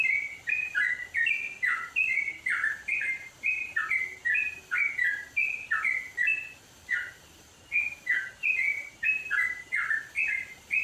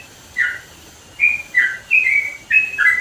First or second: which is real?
second